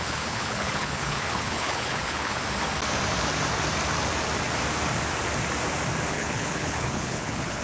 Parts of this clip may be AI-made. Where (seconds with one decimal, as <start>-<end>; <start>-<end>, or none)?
0.0-2.4; 6.1-7.6